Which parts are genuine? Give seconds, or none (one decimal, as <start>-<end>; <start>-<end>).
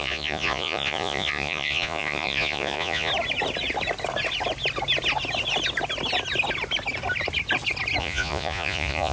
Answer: 3.1-8.0